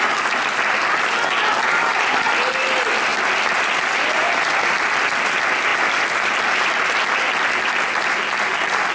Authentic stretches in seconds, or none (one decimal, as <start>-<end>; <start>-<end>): 0.0-8.9